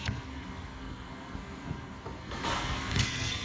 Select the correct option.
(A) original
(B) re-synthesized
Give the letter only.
B